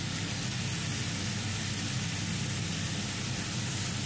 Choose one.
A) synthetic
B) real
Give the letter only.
B